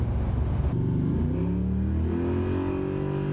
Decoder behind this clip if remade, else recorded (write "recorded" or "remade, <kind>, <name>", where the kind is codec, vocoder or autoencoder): recorded